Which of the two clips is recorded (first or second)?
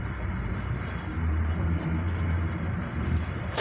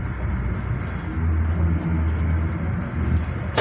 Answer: second